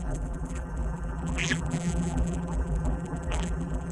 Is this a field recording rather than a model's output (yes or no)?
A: no